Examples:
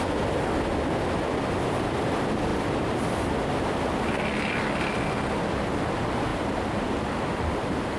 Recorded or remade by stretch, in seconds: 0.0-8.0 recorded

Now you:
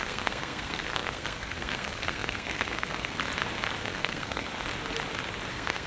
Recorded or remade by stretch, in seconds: 0.0-3.2 remade; 3.2-3.8 recorded; 3.8-4.5 remade; 4.5-5.5 recorded; 5.5-5.9 remade